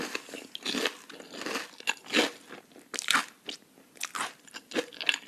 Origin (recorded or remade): recorded